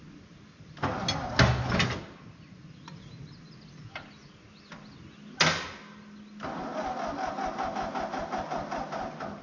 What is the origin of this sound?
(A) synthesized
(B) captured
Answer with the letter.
B